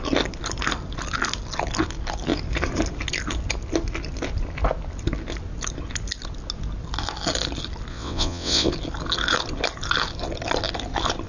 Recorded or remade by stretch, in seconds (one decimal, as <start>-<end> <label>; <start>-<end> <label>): 0.0-7.9 recorded; 7.9-8.7 remade; 8.7-11.3 recorded

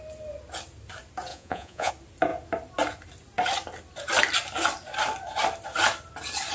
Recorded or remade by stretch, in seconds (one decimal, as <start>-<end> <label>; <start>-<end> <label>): 0.0-1.3 recorded; 1.3-1.9 remade; 1.9-6.5 recorded

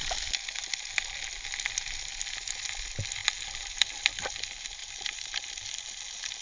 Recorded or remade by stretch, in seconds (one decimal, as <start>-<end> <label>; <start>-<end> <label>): 0.0-6.4 recorded

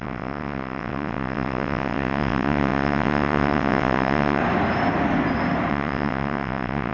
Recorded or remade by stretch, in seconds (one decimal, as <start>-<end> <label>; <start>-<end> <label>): 0.0-4.4 remade; 4.4-5.7 recorded; 5.7-6.9 remade

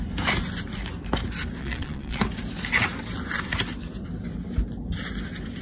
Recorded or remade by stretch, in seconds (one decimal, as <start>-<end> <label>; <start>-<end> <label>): 0.0-1.6 recorded; 1.6-2.2 remade; 2.2-5.6 recorded

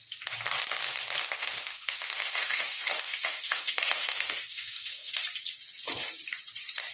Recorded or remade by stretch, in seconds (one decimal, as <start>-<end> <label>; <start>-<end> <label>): 0.0-1.4 recorded; 1.4-5.1 remade; 5.1-6.9 recorded

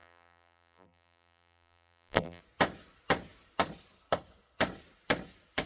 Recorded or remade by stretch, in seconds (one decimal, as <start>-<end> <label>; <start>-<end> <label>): 0.0-2.4 remade; 2.4-5.7 recorded

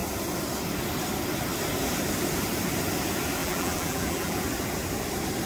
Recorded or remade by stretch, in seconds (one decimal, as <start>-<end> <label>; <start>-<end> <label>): 0.0-3.4 recorded; 3.4-4.4 remade; 4.4-5.5 recorded